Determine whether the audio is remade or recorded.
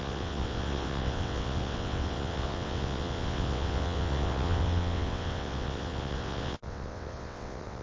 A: remade